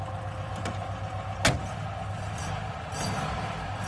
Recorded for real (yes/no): yes